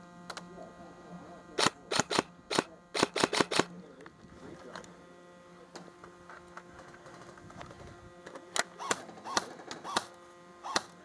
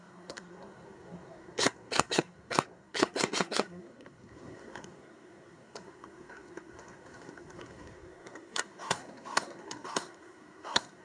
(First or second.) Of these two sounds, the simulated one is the second